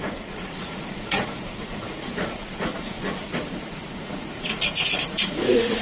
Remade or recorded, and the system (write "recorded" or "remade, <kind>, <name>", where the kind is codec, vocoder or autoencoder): remade, vocoder, Vocos